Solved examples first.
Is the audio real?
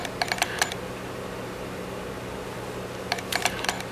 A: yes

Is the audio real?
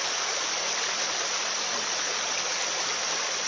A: yes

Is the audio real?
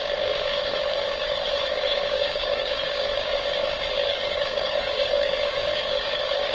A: no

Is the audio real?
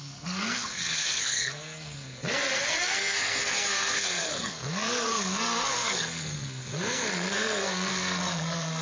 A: no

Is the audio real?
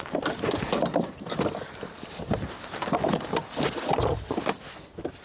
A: yes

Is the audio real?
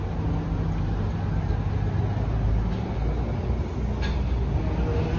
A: yes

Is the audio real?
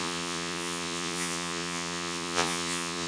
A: no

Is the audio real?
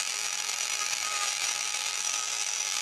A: no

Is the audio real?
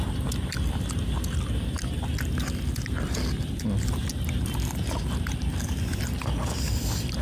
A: yes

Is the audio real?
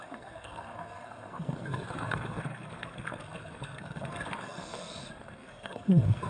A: no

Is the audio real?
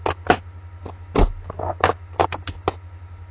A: yes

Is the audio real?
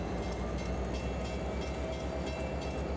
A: yes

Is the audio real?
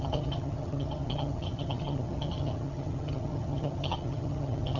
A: no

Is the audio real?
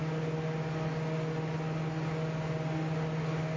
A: yes